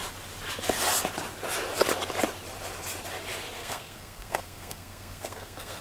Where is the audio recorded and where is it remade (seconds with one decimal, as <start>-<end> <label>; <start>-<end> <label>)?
0.0-3.6 recorded; 3.6-5.8 remade